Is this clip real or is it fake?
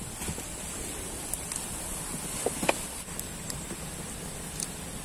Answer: real